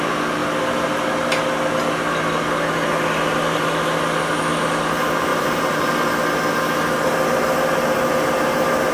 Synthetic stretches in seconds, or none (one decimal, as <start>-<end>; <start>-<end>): 5.3-5.9